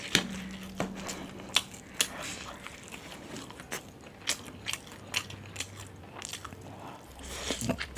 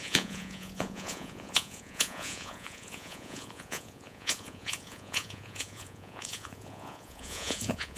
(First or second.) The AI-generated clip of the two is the second